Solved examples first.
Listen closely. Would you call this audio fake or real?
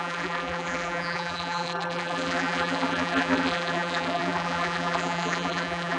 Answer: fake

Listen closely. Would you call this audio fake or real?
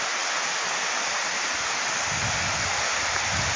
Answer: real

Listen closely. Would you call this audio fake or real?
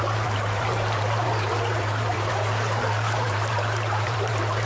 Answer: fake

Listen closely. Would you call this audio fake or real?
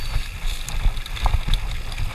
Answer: real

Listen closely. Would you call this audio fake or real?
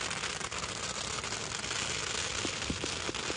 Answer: real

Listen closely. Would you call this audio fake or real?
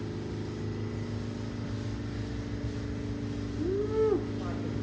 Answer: real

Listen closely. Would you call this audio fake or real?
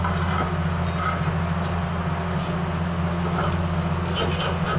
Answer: real